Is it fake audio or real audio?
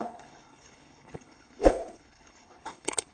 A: fake